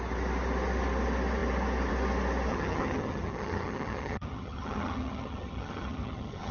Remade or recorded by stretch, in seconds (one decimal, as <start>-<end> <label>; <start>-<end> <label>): 0.0-2.5 recorded; 2.5-6.5 remade